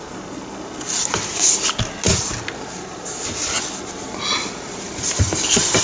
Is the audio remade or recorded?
recorded